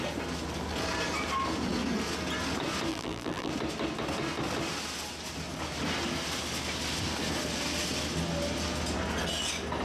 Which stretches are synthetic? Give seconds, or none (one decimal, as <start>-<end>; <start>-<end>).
2.9-3.5